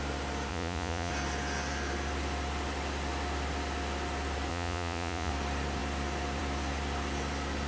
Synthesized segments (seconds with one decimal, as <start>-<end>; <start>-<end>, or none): 0.5-1.1; 4.5-5.3